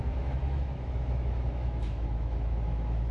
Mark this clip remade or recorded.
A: remade